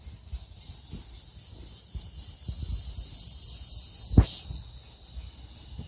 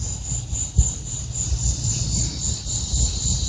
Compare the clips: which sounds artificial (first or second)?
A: second